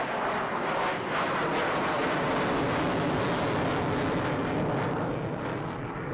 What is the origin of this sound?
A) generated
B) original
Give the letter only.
B